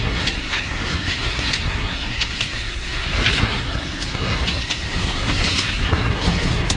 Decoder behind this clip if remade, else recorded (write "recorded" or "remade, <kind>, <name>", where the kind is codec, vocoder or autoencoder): remade, codec, SNAC